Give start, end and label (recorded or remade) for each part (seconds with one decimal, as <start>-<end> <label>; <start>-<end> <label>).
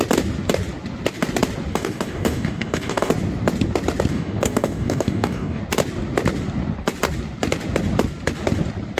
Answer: 0.0-1.7 recorded; 1.7-3.1 remade; 3.1-4.1 recorded; 4.1-5.6 remade; 5.6-9.0 recorded